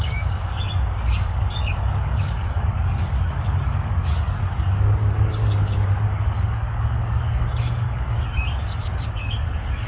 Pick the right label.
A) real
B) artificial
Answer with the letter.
B